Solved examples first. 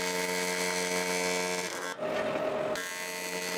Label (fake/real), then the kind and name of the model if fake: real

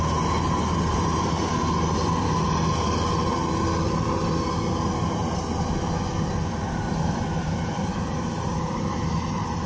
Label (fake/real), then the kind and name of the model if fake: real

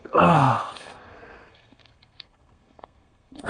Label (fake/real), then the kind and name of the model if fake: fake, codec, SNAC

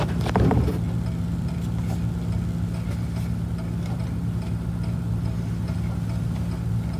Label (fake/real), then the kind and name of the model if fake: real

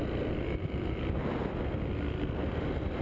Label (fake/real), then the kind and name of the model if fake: real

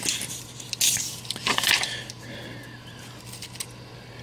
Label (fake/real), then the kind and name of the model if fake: real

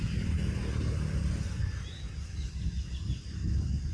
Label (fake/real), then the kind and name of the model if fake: real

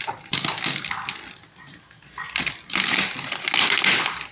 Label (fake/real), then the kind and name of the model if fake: real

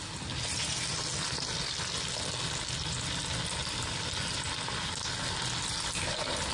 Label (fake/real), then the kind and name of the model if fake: real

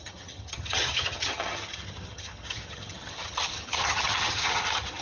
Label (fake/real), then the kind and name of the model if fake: fake, vocoder, HiFi-GAN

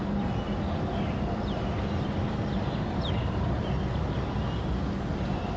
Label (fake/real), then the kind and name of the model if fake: real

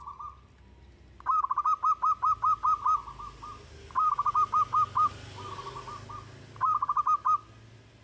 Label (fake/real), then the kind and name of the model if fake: real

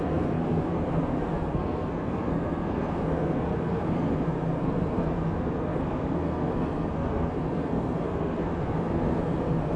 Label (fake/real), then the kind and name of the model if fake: fake, codec, SNAC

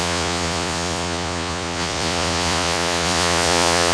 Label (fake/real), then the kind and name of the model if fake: fake, vocoder, Vocos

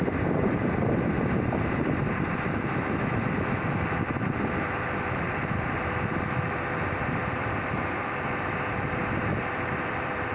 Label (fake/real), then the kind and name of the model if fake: fake, vocoder, BigVGAN v2